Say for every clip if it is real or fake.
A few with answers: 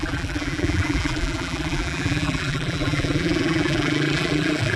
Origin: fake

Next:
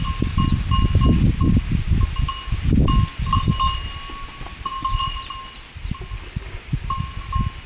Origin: real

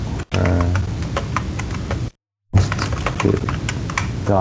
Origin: real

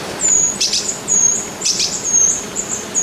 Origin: fake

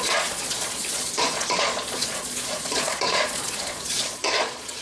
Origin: fake